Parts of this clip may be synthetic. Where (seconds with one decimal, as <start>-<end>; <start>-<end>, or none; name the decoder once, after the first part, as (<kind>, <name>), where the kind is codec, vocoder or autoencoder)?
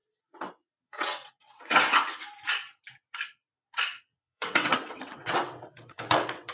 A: 0.0-2.0 (vocoder, WaveNeXt); 3.9-6.5